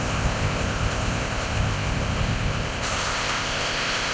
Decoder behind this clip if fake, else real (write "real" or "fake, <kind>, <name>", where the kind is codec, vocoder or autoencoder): fake, codec, ZipCodec